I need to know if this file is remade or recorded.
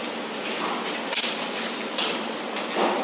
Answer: recorded